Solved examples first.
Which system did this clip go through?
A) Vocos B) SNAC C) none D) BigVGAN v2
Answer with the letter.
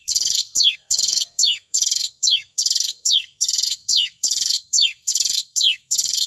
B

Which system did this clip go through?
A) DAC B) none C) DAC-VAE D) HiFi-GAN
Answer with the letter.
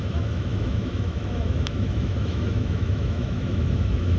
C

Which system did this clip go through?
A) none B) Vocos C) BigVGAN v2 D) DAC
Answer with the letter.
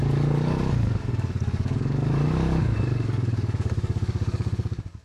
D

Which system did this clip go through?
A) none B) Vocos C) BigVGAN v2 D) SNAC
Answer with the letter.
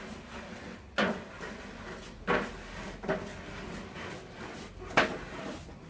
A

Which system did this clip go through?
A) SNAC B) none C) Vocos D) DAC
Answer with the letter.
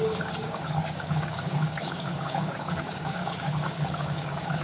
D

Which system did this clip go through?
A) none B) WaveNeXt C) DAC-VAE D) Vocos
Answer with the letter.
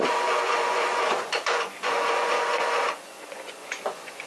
D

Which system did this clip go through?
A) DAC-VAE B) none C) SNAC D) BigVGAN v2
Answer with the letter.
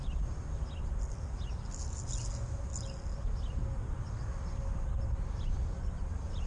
B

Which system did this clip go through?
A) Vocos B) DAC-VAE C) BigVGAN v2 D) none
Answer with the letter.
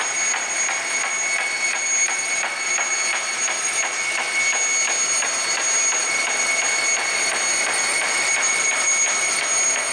D